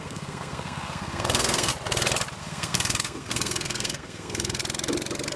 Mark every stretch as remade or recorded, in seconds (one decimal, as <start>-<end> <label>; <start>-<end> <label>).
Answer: 0.0-1.7 remade; 1.7-2.4 recorded; 2.4-4.6 remade; 4.6-5.4 recorded